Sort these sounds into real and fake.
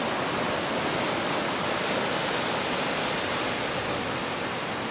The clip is real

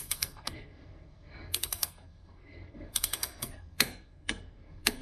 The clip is fake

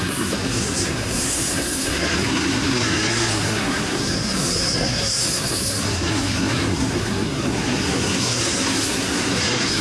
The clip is fake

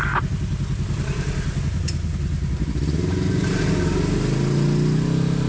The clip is real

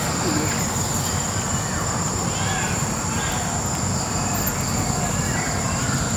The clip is real